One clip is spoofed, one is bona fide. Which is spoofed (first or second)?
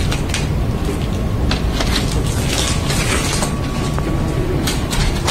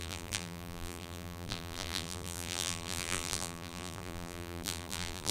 second